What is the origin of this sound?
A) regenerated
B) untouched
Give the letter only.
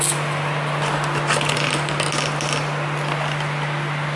B